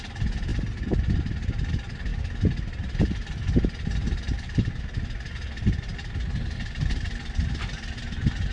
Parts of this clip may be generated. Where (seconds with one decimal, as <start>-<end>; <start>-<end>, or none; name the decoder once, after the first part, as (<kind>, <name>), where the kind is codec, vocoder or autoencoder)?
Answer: none